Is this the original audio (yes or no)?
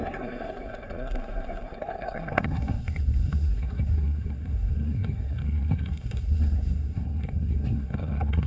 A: no